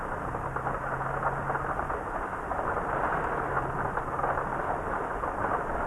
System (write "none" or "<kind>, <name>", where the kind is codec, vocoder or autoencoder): none